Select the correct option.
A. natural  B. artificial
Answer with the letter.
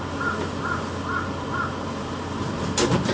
A